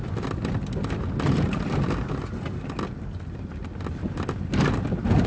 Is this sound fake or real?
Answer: real